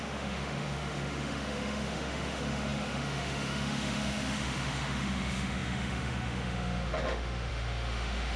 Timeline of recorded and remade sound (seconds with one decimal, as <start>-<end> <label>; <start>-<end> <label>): 0.0-8.4 remade